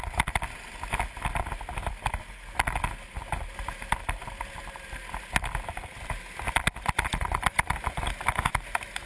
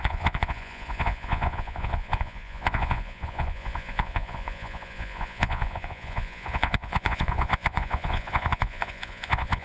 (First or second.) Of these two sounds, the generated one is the second